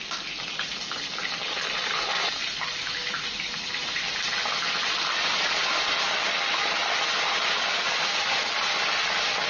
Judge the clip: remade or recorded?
recorded